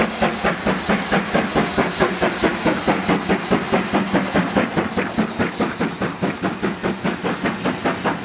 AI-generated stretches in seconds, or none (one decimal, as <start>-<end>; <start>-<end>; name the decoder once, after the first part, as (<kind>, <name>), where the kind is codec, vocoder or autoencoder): none